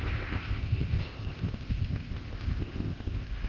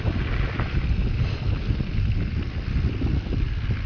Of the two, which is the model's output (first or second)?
first